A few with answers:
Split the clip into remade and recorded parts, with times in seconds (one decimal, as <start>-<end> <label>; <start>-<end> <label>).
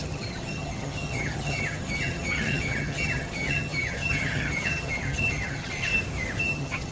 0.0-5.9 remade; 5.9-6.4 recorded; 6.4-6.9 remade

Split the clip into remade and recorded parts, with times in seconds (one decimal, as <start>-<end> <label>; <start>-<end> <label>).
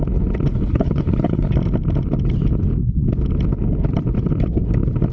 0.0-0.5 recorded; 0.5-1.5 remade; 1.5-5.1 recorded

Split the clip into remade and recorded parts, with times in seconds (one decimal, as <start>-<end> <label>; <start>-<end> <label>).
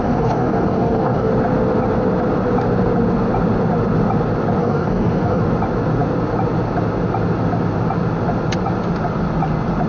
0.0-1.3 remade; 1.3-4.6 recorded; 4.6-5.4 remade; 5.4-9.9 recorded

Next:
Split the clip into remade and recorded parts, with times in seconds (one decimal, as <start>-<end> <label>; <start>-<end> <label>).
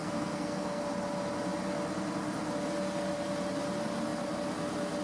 0.0-0.8 remade; 0.8-5.0 recorded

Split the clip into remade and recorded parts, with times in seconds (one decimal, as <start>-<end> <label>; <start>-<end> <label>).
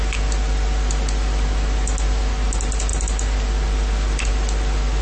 0.0-5.0 recorded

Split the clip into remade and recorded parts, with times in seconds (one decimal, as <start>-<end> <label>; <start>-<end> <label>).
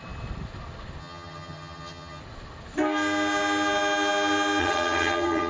0.0-1.0 recorded; 1.0-2.2 remade; 2.2-4.6 recorded; 4.6-5.5 remade